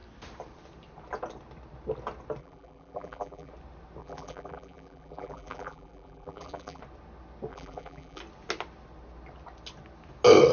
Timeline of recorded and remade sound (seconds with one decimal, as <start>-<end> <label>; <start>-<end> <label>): 0.0-2.4 recorded; 2.4-3.5 remade; 3.5-4.0 recorded; 4.0-6.8 remade; 6.8-7.5 recorded; 7.5-8.2 remade; 8.2-10.5 recorded